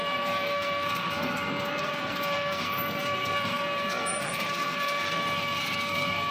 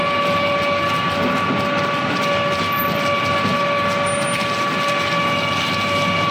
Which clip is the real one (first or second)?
second